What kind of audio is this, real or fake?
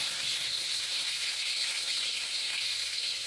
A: fake